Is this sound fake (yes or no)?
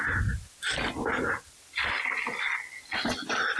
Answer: no